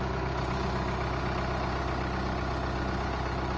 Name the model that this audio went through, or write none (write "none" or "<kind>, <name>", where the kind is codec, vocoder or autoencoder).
none